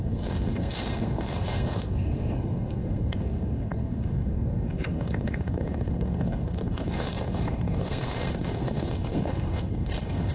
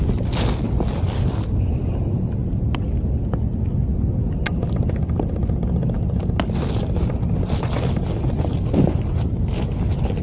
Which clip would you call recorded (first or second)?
second